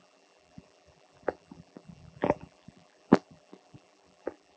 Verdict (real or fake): fake